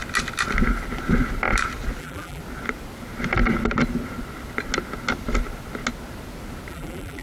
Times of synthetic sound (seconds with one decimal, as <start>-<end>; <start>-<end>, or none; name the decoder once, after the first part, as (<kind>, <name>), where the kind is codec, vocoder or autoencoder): 2.0-2.4 (vocoder, BigVGAN v2); 6.7-7.2